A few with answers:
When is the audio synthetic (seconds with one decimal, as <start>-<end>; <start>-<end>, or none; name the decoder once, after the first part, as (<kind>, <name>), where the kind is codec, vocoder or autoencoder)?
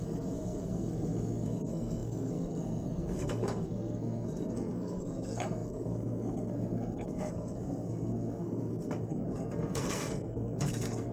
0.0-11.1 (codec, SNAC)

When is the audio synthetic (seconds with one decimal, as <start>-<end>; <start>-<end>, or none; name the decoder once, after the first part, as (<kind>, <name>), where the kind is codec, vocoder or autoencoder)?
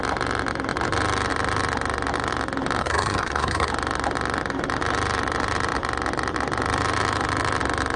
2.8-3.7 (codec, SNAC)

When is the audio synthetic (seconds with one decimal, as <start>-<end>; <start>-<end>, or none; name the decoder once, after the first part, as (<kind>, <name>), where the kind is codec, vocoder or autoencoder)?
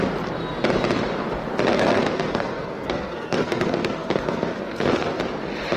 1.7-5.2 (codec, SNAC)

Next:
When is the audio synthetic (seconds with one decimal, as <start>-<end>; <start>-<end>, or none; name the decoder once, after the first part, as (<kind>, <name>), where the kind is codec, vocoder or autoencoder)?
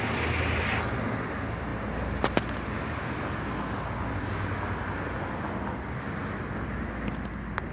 none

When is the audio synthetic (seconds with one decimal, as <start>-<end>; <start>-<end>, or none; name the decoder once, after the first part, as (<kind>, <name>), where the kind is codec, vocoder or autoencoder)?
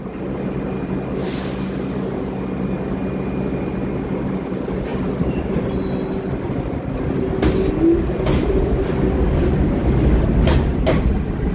none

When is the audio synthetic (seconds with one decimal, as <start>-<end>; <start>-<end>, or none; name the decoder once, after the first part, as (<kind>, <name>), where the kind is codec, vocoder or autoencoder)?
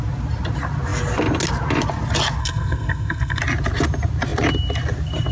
2.4-3.4 (codec, SNAC)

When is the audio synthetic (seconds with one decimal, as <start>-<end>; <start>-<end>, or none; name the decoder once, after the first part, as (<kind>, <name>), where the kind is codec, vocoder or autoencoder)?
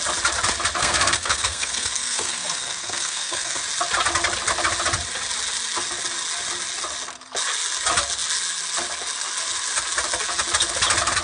0.8-3.6 (codec, SNAC)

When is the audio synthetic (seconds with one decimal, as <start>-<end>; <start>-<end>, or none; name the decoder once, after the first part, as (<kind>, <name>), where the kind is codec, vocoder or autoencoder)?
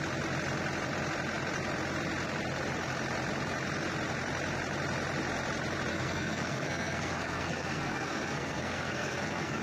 5.9-9.6 (codec, SNAC)